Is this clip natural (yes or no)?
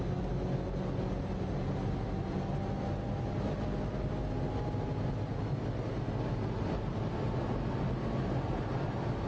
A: yes